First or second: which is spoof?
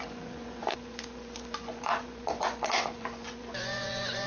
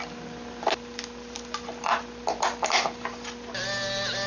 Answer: first